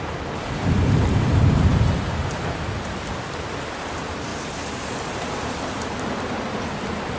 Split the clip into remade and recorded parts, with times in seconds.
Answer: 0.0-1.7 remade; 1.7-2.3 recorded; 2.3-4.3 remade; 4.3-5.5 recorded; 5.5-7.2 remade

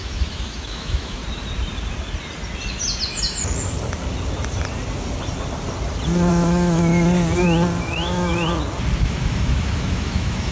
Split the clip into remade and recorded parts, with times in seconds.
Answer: 0.0-1.2 remade; 1.2-6.3 recorded; 6.3-6.9 remade; 6.9-7.8 recorded; 7.8-8.3 remade; 8.3-9.0 recorded; 9.0-10.5 remade

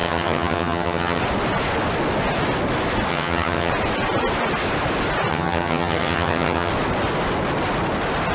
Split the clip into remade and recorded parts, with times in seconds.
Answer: 0.0-1.2 remade; 1.2-3.1 recorded; 3.1-3.7 remade; 3.7-5.3 recorded; 5.3-6.7 remade; 6.7-8.3 recorded

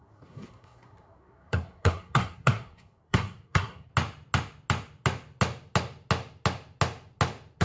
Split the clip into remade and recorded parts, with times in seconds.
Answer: 0.0-3.9 remade; 3.9-7.6 recorded